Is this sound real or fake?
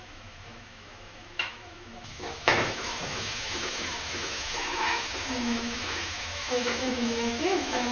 fake